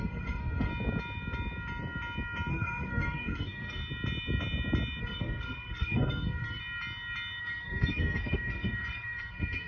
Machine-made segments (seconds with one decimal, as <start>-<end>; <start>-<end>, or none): 0.0-0.7; 2.5-3.8; 5.0-6.6; 7.4-9.7